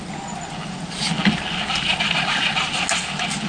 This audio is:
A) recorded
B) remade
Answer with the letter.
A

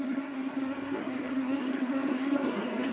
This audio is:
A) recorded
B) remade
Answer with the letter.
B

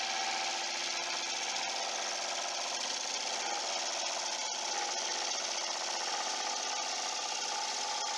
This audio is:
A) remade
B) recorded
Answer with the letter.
B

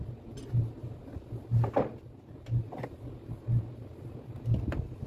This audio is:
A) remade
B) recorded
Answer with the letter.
B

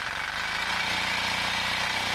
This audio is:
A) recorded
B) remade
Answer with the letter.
B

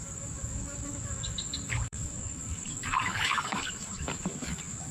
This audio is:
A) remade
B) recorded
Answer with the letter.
A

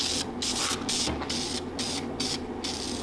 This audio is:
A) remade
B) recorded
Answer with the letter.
B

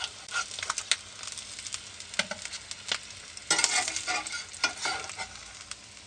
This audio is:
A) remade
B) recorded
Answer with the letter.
B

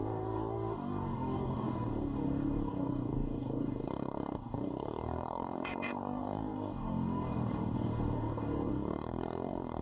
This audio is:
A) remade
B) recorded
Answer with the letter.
A